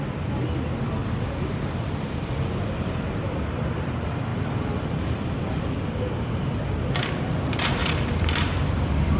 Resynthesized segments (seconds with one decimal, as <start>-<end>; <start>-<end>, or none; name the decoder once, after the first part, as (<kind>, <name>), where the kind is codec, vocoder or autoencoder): 1.0-3.7 (vocoder, BigVGAN v2); 4.3-5.8; 7.8-9.2